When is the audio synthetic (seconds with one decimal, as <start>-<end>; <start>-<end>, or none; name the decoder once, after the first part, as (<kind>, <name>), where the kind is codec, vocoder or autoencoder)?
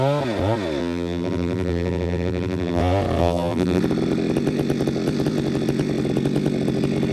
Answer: 0.8-2.8 (vocoder, BigVGAN v2); 3.2-3.8